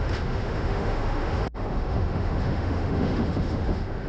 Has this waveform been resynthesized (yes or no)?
yes